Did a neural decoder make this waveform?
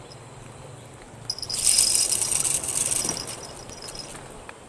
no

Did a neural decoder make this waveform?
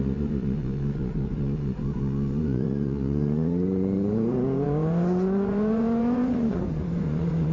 yes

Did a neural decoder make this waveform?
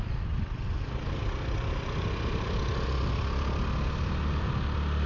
no